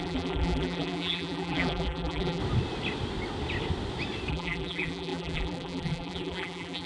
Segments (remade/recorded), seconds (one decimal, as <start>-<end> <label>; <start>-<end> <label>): 0.0-2.4 remade; 2.4-4.3 recorded; 4.3-6.9 remade